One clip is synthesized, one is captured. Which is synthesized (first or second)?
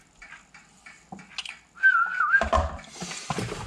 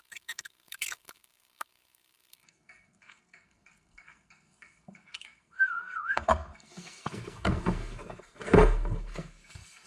second